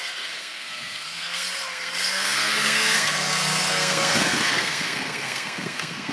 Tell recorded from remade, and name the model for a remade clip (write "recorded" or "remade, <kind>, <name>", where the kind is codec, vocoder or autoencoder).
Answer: remade, codec, SNAC